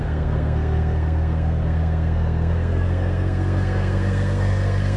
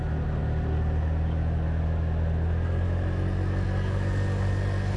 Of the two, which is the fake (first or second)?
first